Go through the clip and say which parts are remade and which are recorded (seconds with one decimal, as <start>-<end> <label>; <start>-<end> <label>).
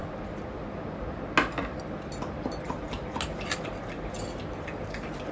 0.0-5.3 recorded